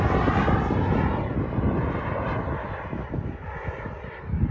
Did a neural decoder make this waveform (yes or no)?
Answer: no